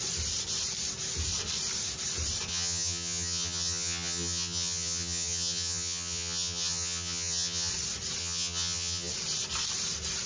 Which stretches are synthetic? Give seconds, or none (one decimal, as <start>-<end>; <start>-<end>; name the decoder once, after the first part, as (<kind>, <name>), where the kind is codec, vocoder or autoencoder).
2.5-7.7 (vocoder, HiFi-GAN); 8.2-9.1